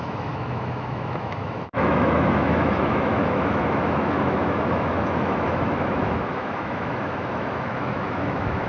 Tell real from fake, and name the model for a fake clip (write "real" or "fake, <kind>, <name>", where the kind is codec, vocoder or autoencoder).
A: fake, autoencoder, DAC-VAE